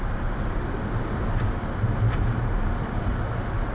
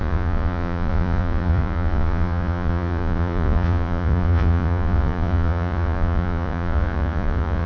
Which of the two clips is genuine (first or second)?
first